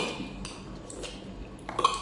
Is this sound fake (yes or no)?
no